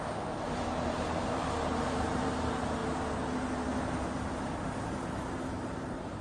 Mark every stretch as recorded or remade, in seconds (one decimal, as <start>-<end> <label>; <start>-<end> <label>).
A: 0.0-2.8 remade; 2.8-4.8 recorded; 4.8-6.2 remade